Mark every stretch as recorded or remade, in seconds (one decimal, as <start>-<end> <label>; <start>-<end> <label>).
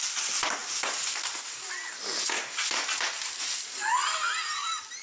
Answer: 0.0-5.0 recorded